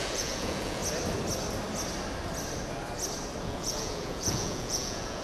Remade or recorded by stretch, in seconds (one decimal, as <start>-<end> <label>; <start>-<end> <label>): 0.0-0.8 remade; 0.8-3.4 recorded; 3.4-5.2 remade